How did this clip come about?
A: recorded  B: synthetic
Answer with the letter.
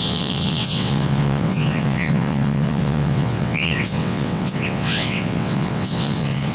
B